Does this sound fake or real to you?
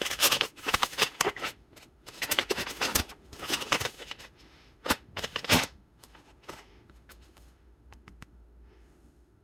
fake